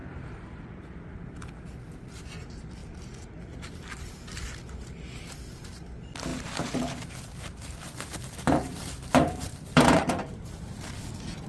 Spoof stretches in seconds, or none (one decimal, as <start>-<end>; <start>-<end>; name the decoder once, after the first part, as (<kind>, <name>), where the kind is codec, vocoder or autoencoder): 0.0-0.5 (vocoder, BigVGAN v2); 6.3-10.8